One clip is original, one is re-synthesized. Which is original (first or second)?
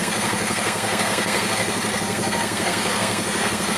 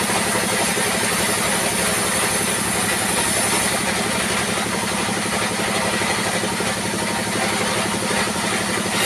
second